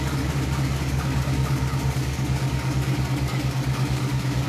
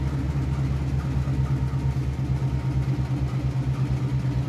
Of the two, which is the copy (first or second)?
first